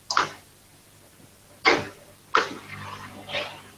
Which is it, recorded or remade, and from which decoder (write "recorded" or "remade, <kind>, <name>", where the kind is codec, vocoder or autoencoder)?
recorded